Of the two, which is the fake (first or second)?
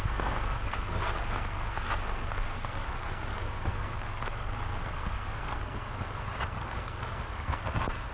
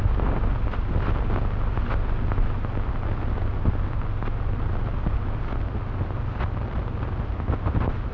first